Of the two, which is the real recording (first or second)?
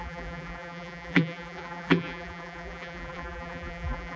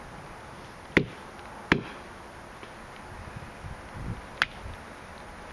second